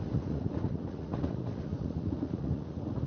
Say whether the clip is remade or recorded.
remade